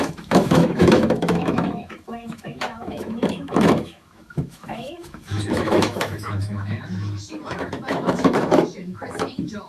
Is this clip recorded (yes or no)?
no